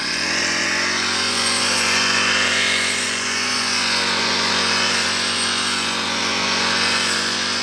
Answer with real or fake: fake